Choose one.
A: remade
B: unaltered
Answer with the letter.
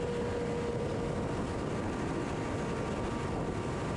B